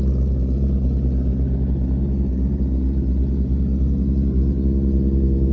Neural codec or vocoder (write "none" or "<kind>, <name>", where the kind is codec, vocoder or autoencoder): none